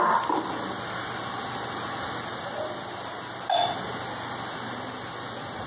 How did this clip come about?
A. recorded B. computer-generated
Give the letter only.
A